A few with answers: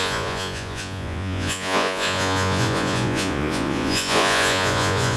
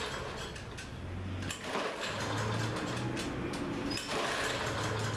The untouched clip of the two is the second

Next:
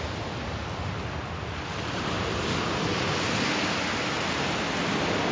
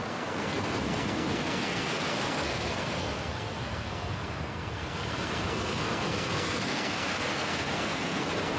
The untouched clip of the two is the first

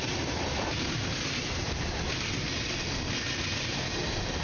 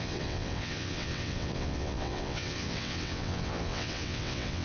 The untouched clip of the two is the first